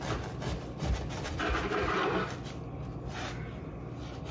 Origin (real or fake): real